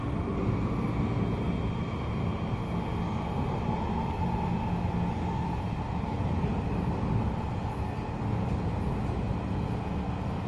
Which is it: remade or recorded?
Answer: recorded